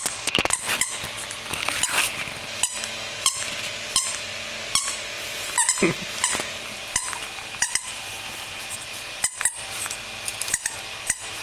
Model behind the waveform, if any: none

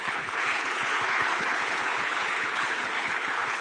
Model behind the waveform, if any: codec, HILCodec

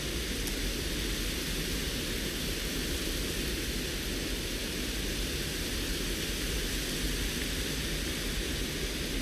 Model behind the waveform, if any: none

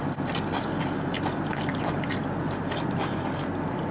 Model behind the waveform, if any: none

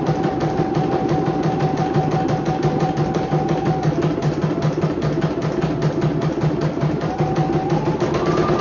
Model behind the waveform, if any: none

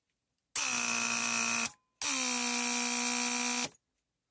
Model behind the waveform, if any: none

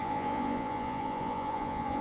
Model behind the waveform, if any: vocoder, Vocos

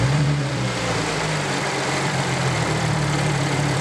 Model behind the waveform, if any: vocoder, BigVGAN v2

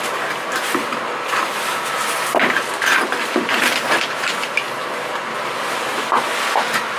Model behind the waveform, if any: none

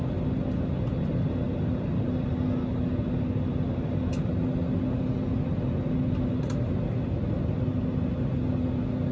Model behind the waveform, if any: none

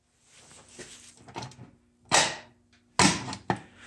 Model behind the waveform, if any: none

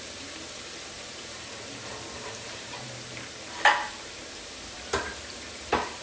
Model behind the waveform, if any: vocoder, BigVGAN v2